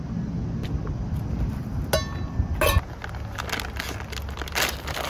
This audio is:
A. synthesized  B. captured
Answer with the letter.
B